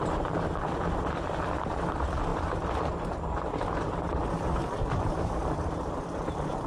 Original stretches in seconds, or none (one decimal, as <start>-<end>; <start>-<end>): none